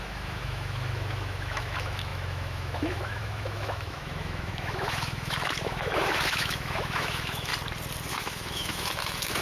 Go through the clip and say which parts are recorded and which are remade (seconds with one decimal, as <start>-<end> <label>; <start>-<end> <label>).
0.0-7.5 remade; 7.5-8.1 recorded; 8.1-9.4 remade